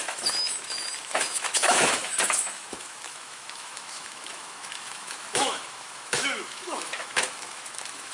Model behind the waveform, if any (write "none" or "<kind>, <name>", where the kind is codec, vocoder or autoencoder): autoencoder, DAC-VAE